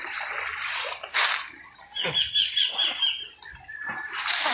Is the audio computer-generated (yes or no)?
no